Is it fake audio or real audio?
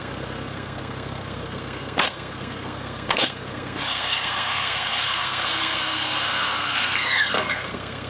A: fake